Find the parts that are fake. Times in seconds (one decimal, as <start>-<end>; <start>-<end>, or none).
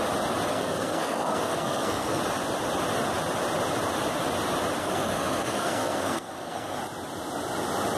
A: 0.5-2.2; 4.8-6.8